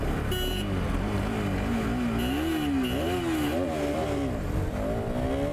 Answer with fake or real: real